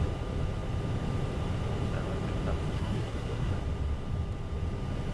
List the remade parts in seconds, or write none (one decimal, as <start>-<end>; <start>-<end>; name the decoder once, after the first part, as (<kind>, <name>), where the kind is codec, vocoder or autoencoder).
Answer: 2.7-3.5 (codec, SNAC)